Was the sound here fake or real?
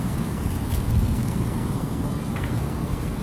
fake